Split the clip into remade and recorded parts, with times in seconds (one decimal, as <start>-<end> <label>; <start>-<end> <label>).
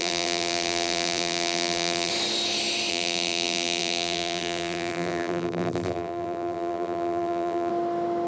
0.0-2.1 remade; 2.1-2.9 recorded; 2.9-7.7 remade; 7.7-8.3 recorded